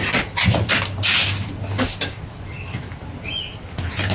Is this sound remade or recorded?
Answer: recorded